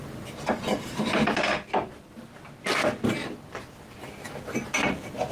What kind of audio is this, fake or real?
real